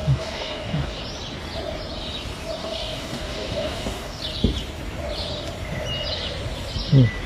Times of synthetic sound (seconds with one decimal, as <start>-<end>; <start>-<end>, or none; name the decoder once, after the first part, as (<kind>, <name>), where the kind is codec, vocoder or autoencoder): 0.0-1.0 (codec, DAC); 2.6-4.2